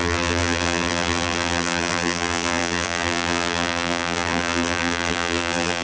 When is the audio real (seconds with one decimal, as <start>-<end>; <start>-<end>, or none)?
none